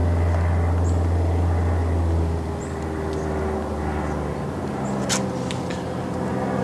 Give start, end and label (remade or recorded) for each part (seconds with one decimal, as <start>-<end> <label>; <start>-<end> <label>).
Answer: 0.0-6.6 recorded

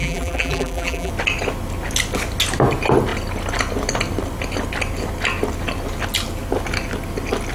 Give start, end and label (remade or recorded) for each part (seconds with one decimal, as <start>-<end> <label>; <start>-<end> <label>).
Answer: 0.0-1.1 remade; 1.1-7.5 recorded

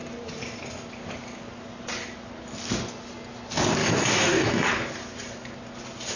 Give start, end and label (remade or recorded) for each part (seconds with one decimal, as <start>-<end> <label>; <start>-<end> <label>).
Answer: 0.0-3.8 recorded; 3.8-4.7 remade; 4.7-6.2 recorded

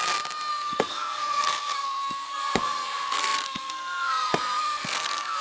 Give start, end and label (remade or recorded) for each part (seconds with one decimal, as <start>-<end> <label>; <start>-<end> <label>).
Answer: 0.0-0.5 recorded; 0.5-5.4 remade

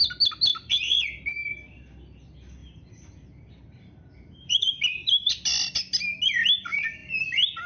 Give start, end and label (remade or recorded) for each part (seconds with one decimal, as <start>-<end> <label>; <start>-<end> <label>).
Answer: 0.0-0.5 recorded; 0.5-1.0 remade; 1.0-2.6 recorded; 2.6-5.3 remade; 5.3-7.7 recorded

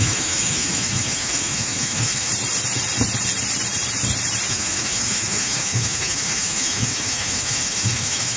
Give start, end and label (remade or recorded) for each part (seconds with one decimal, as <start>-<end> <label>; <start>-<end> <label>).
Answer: 0.0-2.3 remade; 2.3-4.5 recorded; 4.5-8.4 remade

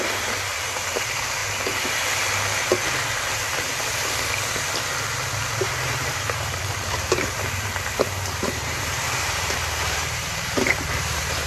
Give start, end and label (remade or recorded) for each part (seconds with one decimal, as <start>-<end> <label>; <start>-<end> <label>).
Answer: 0.0-1.4 remade; 1.4-5.4 recorded; 5.4-11.5 remade

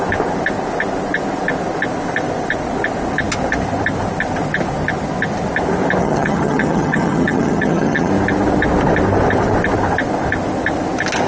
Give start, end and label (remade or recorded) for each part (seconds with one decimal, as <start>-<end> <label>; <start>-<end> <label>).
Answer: 0.0-6.0 recorded; 6.0-8.1 remade; 8.1-11.3 recorded